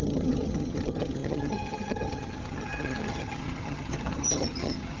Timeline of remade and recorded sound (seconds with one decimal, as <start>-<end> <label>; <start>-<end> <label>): 0.0-5.0 remade